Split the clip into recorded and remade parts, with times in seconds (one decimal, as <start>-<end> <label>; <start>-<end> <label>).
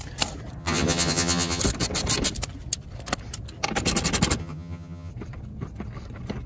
0.0-0.6 recorded; 0.6-1.6 remade; 1.6-4.4 recorded; 4.4-5.1 remade; 5.1-6.5 recorded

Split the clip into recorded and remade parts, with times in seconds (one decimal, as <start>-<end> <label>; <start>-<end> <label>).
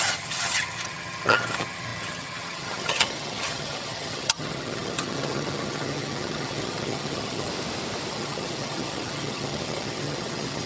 0.0-7.5 remade; 7.5-8.1 recorded; 8.1-10.7 remade